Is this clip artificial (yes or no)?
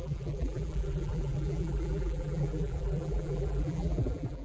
yes